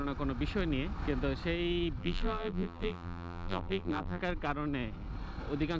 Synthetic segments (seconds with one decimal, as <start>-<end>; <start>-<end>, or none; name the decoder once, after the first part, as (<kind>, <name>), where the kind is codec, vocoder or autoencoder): 2.0-4.2 (vocoder, BigVGAN v2)